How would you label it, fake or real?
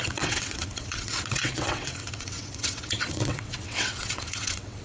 fake